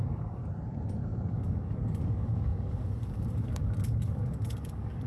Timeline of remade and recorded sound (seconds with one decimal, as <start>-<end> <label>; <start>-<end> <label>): 0.0-0.4 remade; 0.4-1.3 recorded; 1.3-5.1 remade